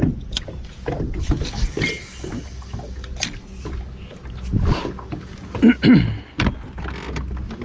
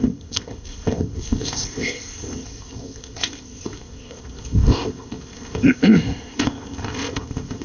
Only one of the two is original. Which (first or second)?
first